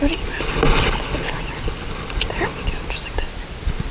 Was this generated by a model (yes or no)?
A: no